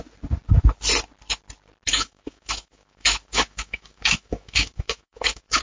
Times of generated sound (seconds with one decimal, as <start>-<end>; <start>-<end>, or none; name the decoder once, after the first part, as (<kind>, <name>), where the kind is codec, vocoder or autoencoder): 1.9-5.6 (autoencoder, DAC-VAE)